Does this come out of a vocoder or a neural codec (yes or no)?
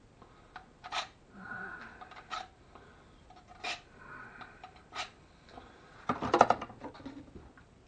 no